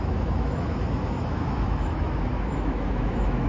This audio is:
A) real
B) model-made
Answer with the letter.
B